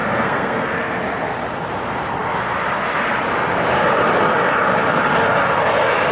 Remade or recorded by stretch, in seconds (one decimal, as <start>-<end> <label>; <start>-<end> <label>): 0.0-0.8 remade; 0.8-6.1 recorded